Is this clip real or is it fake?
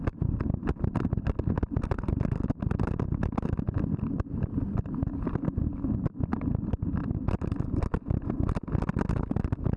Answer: real